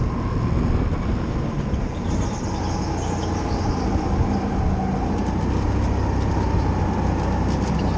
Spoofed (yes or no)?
no